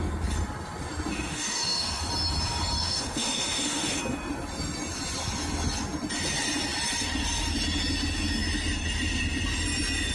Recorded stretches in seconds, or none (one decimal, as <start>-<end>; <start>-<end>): 0.0-1.1; 2.0-2.8; 4.0-10.1